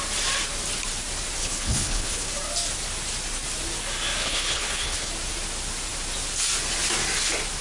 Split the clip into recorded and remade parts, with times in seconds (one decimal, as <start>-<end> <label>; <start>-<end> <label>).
0.0-1.4 recorded; 1.4-2.3 remade; 2.3-4.2 recorded; 4.2-5.1 remade; 5.1-7.6 recorded